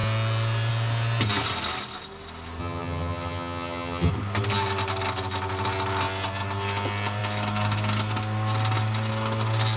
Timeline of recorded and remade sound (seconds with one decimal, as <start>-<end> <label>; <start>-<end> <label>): 0.0-2.6 recorded; 2.6-4.1 remade; 4.1-9.8 recorded